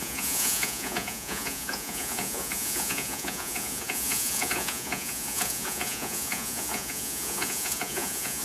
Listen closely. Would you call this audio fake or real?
fake